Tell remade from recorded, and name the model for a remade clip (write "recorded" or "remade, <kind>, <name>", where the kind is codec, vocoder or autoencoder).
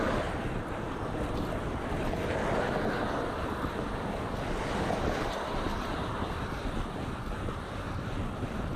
recorded